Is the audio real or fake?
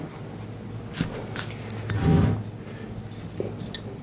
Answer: real